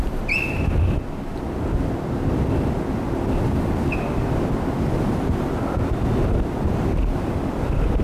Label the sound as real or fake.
real